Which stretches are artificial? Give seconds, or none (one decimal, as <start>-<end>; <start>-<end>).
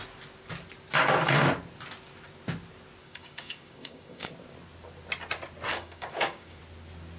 3.0-4.3; 5.7-6.6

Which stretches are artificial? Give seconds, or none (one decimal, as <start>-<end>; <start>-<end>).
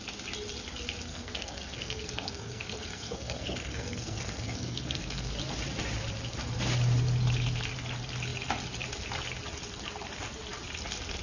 1.1-5.3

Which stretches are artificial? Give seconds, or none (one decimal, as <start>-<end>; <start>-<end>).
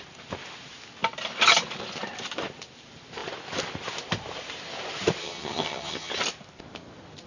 5.2-6.1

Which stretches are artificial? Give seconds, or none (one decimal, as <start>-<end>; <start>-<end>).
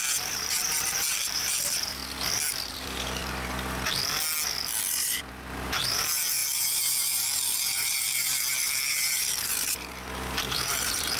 0.0-2.0; 2.7-3.2; 5.3-11.2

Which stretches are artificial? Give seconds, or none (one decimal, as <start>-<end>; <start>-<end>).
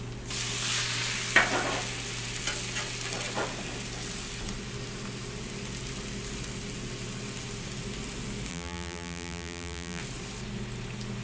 8.5-10.0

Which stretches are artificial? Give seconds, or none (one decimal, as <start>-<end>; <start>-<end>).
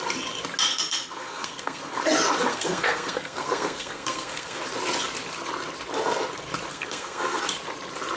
0.7-2.0; 2.5-4.6; 6.7-7.4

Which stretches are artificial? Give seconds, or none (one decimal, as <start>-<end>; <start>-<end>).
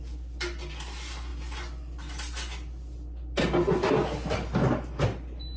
none